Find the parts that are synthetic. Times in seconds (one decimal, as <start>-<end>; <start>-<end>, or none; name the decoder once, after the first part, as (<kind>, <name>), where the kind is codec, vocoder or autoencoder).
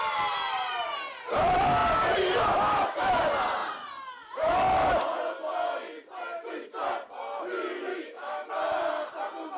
7.9-8.5 (autoencoder, DAC-VAE)